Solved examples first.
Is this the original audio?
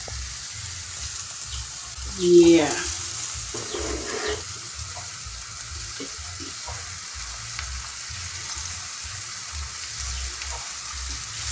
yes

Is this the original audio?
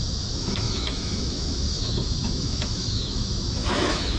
no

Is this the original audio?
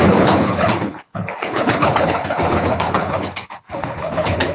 no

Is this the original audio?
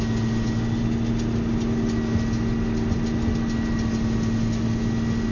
yes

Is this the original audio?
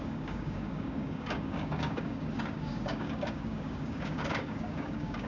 no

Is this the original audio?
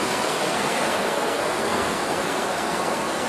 no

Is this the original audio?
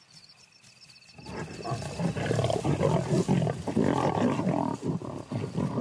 yes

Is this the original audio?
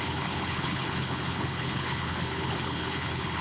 no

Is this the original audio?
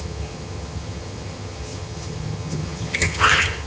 no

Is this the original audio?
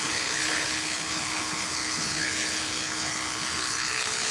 no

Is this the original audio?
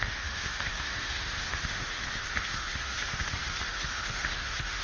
no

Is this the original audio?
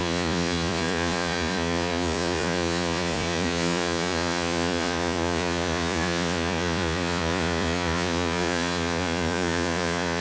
no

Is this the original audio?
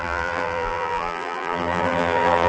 no